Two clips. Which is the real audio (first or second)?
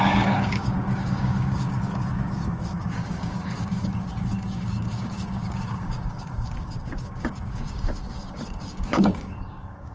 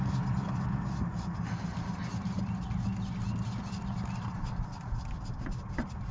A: second